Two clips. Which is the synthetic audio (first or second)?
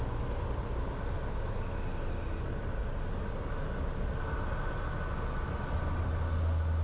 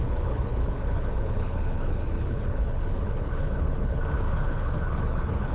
second